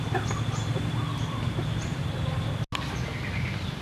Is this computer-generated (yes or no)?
no